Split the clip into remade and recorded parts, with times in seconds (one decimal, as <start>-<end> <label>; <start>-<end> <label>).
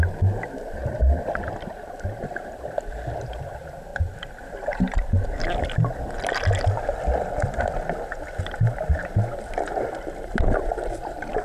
0.0-0.8 recorded; 0.8-2.7 remade; 2.7-3.9 recorded; 3.9-5.4 remade; 5.4-11.4 recorded